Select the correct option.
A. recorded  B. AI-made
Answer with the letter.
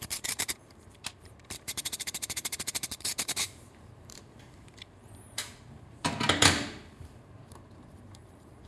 B